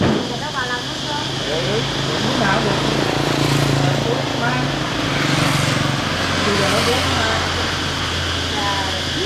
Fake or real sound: real